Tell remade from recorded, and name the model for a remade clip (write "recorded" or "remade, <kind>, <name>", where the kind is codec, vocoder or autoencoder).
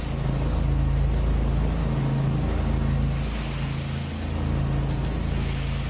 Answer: recorded